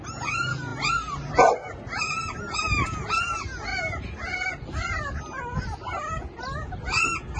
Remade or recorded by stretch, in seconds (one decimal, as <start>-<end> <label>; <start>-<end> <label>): 0.0-7.4 recorded